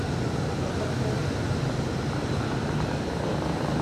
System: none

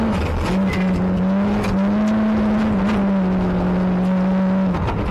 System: none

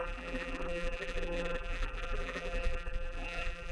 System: vocoder, BigVGAN v2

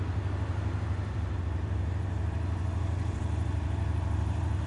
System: vocoder, BigVGAN v2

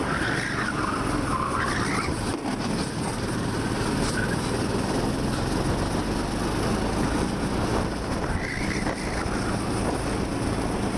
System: none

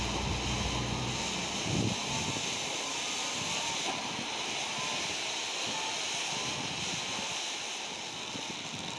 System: none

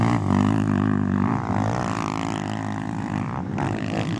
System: vocoder, BigVGAN v2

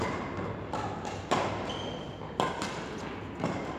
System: none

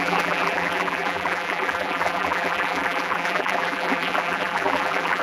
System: vocoder, BigVGAN v2